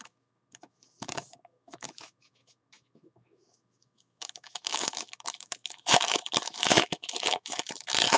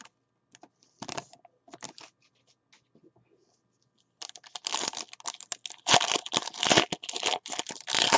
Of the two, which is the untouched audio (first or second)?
second